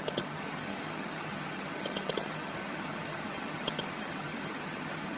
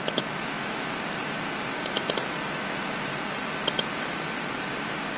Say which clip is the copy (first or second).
first